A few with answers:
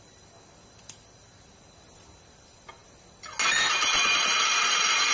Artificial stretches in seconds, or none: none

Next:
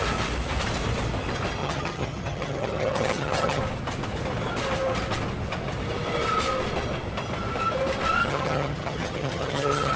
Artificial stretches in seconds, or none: 1.6-3.6 (vocoder, HiFi-GAN); 8.2-10.0